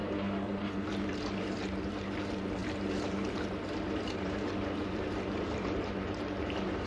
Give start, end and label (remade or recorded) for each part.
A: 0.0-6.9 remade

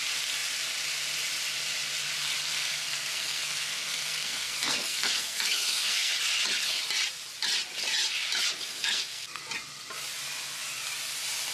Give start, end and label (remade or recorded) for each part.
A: 0.0-2.5 recorded; 2.5-6.1 remade; 6.1-8.7 recorded; 8.7-9.4 remade; 9.4-11.5 recorded